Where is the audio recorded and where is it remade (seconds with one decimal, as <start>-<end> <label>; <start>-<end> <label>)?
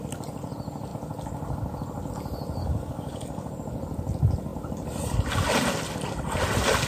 0.0-2.6 recorded; 2.6-3.5 remade; 3.5-6.9 recorded